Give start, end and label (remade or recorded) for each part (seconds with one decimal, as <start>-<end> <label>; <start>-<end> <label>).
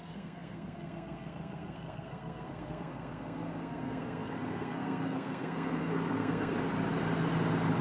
0.0-6.5 remade; 6.5-7.8 recorded